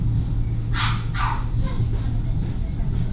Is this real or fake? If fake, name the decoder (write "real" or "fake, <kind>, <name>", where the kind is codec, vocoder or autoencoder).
real